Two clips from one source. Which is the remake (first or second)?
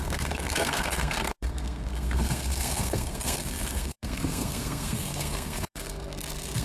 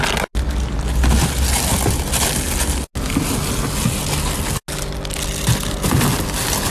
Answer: first